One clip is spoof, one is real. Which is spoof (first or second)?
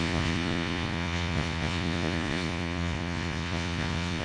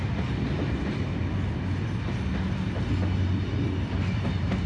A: first